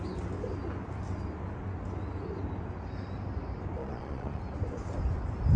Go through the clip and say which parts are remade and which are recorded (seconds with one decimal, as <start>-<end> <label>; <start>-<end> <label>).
0.0-3.8 recorded; 3.8-4.4 remade; 4.4-5.6 recorded

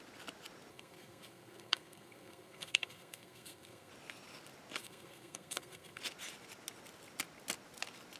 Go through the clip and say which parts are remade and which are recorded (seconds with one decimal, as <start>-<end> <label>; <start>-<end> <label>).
0.0-0.7 recorded; 0.7-3.9 remade; 3.9-4.8 recorded; 4.8-6.0 remade; 6.0-8.2 recorded

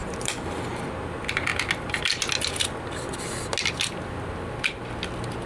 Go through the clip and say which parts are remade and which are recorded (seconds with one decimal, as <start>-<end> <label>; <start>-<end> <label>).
0.0-5.5 recorded